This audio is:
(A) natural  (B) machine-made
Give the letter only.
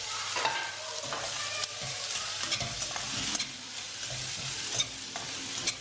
A